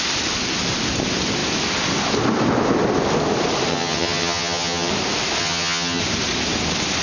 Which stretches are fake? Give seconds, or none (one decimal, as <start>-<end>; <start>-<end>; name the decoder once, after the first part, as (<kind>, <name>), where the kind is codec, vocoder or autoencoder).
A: 3.7-4.9 (vocoder, HiFi-GAN); 5.4-6.0